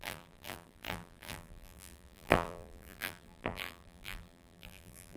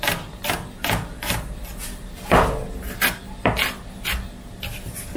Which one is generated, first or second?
first